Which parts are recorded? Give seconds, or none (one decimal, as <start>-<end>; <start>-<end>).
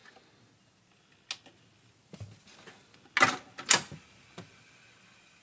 0.0-5.4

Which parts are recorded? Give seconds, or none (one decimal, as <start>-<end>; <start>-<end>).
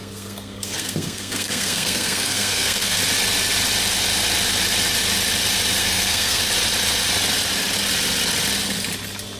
3.0-5.8; 6.4-9.4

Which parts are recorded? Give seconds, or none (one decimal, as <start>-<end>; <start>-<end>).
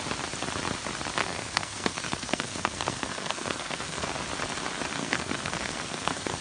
0.0-1.2; 4.1-5.0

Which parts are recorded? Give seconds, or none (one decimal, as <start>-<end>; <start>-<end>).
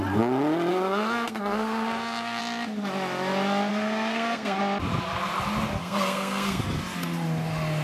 0.0-0.7; 2.4-3.7; 4.6-5.8; 6.6-7.8